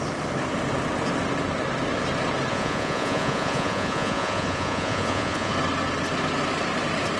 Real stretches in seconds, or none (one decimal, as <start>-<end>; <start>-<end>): 0.0-2.5; 5.5-7.2

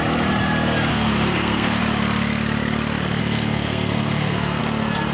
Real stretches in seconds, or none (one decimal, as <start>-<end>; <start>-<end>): 0.0-0.9; 1.8-3.2; 4.6-5.1

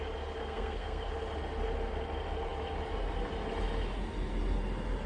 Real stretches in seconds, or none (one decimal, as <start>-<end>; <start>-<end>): 0.0-0.4; 1.0-5.1

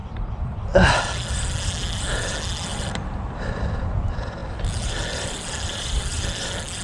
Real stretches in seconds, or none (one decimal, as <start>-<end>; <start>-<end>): 0.7-2.7; 3.8-4.4; 6.0-6.8

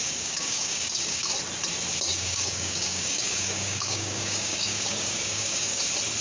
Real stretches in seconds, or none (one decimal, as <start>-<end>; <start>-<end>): 1.3-2.1; 5.8-6.2

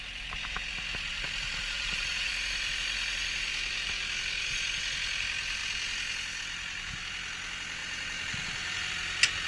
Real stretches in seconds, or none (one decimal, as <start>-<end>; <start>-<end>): 0.0-1.1; 2.3-7.8; 8.9-9.5

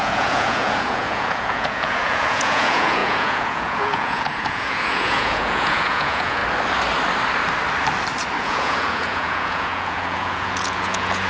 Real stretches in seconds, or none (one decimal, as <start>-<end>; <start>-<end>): 6.4-8.4